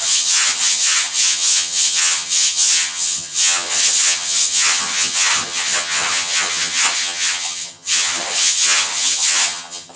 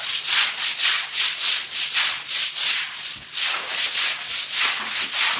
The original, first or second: second